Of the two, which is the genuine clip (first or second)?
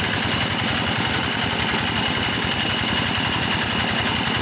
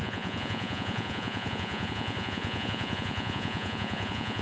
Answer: first